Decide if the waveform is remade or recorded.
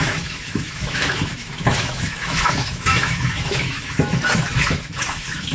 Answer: remade